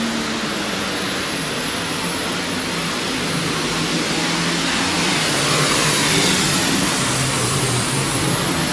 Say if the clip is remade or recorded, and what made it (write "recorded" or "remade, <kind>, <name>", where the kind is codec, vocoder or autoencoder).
recorded